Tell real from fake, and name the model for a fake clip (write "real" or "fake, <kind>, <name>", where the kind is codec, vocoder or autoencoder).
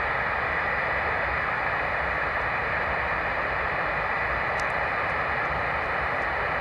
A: real